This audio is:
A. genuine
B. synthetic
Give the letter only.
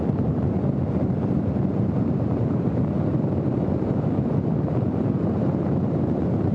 B